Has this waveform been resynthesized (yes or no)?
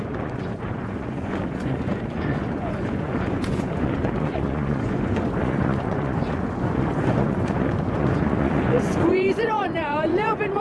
yes